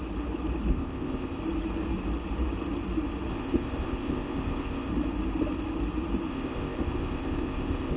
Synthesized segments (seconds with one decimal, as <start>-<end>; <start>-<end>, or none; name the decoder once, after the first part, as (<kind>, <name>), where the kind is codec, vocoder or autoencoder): 0.7-1.4 (codec, ZipCodec); 3.3-4.9; 6.3-8.0